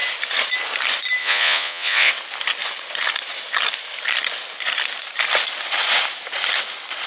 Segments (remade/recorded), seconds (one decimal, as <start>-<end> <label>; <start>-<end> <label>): 0.0-1.2 recorded; 1.2-2.1 remade; 2.1-7.1 recorded